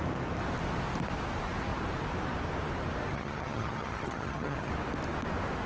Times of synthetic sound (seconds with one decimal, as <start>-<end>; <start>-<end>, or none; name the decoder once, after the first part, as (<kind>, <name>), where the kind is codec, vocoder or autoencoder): 3.1-4.7 (vocoder, HiFi-GAN)